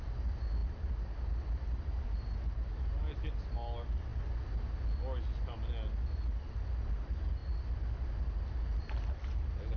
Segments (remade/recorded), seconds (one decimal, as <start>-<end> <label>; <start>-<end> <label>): 0.0-9.8 recorded